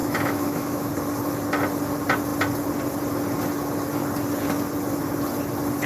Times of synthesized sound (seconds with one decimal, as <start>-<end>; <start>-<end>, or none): 0.0-0.9